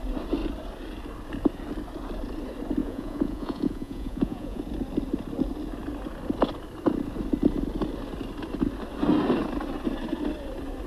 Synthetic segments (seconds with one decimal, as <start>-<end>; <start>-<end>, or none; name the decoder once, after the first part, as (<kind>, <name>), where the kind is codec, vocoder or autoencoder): 2.8-4.6 (vocoder, Vocos)